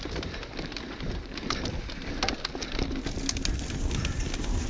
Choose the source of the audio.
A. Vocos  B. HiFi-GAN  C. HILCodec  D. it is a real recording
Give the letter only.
D